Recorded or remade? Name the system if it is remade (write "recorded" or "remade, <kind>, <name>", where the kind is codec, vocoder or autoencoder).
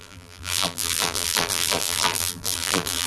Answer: remade, vocoder, BigVGAN v2